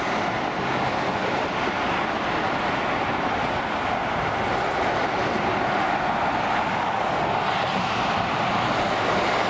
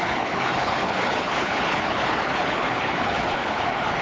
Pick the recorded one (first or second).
first